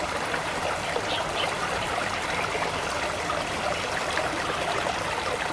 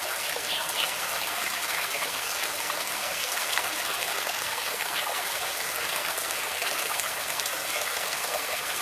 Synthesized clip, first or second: second